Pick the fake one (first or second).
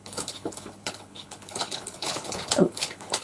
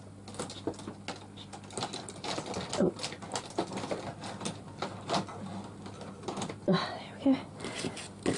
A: first